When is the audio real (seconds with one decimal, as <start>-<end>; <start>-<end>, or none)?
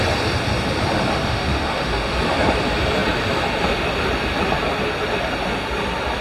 0.0-1.1; 2.2-6.2